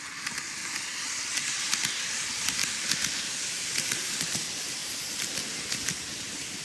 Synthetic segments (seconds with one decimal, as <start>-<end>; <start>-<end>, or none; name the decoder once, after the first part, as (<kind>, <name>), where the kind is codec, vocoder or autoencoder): 0.0-2.6 (vocoder, BigVGAN v2); 3.5-6.6